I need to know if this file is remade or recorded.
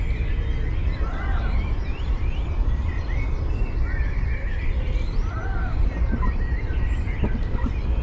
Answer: remade